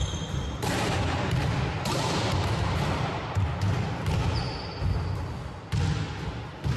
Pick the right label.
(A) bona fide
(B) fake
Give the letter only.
A